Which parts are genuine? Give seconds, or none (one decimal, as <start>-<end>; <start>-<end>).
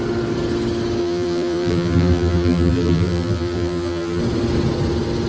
0.0-1.0; 4.2-5.3